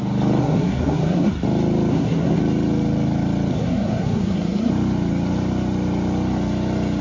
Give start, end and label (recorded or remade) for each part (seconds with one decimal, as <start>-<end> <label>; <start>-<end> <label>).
0.0-0.4 recorded; 0.4-1.3 remade; 1.3-1.9 recorded; 1.9-2.4 remade; 2.4-3.5 recorded; 3.5-4.7 remade; 4.7-7.0 recorded